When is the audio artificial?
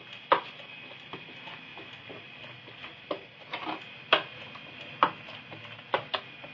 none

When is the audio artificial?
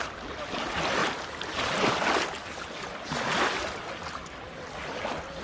none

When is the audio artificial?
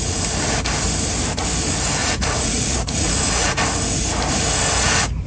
2.0-3.6 (vocoder, Vocos)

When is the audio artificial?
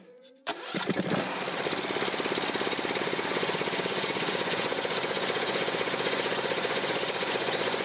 0.0-0.5 (vocoder, Vocos); 3.0-7.8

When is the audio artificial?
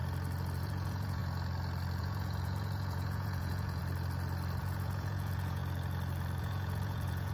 0.6-1.2 (vocoder, Vocos); 2.0-3.8; 4.6-5.6; 6.4-7.3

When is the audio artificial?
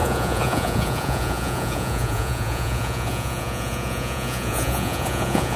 0.0-5.6 (vocoder, Vocos)